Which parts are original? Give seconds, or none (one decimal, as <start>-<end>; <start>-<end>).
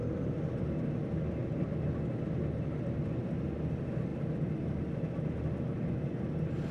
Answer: 0.0-6.7